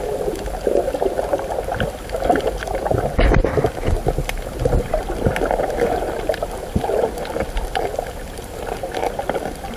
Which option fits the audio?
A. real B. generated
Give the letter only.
A